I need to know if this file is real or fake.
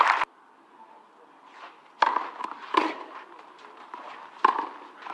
real